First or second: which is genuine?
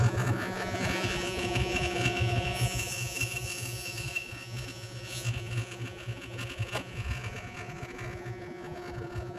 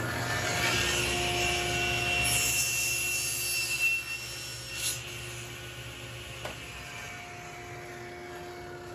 second